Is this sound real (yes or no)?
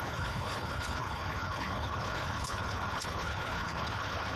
no